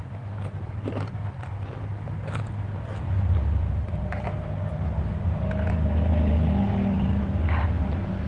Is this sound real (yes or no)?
yes